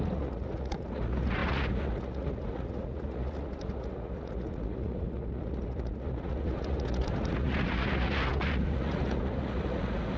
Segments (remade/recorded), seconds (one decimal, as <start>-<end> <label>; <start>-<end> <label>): 0.0-10.2 remade